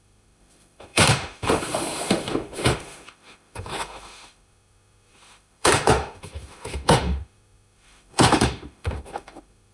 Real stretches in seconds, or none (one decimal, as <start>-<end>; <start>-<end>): none